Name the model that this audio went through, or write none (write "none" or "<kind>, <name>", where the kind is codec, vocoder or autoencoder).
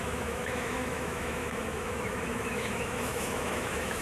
autoencoder, DAC-VAE